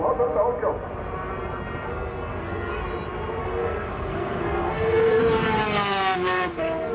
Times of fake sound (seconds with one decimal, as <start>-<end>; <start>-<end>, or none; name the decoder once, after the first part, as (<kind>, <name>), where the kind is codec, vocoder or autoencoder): 1.9-2.8 (codec, SNAC); 3.4-5.2